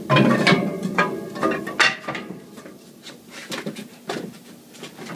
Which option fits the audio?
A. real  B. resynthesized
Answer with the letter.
A